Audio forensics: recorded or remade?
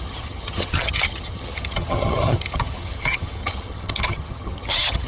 remade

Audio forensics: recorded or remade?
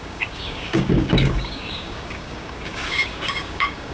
remade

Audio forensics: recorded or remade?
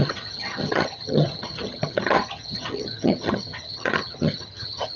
remade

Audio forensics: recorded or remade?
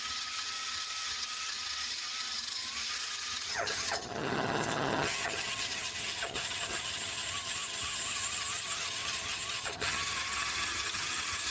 remade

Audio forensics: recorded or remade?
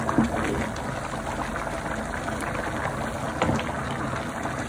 recorded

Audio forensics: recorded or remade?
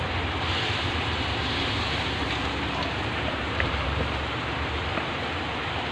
remade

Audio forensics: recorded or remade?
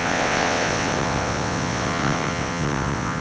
remade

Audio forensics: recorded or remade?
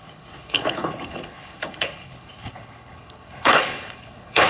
remade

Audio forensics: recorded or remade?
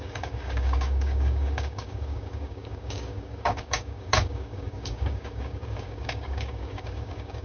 remade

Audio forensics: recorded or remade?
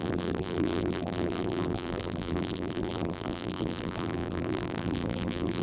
remade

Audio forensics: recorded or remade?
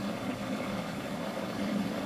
remade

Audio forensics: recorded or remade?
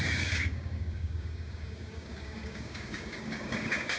remade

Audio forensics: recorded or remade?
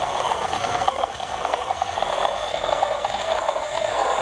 remade